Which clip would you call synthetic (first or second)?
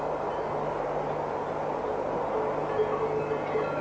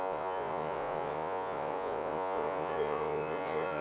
second